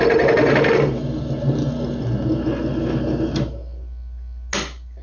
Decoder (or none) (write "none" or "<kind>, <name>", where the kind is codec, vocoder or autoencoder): none